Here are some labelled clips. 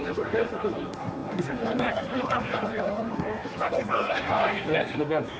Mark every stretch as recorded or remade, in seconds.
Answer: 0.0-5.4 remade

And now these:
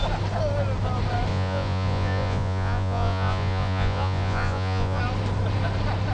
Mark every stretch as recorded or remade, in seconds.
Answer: 0.0-1.3 recorded; 1.3-5.0 remade; 5.0-6.1 recorded

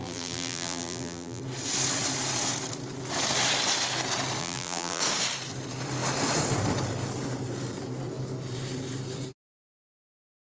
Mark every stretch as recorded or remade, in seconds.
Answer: 0.0-1.4 remade; 1.4-4.4 recorded; 4.4-5.0 remade; 5.0-10.5 recorded

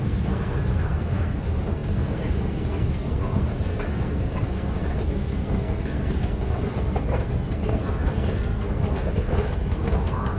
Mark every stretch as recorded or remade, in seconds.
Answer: 0.0-10.4 remade

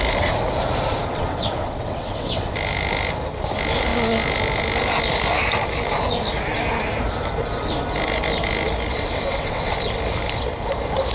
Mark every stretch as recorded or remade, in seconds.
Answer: 0.0-1.1 recorded; 1.1-2.5 remade; 2.5-8.9 recorded; 8.9-9.7 remade; 9.7-11.1 recorded